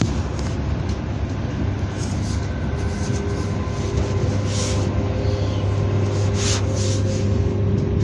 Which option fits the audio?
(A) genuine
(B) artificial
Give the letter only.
A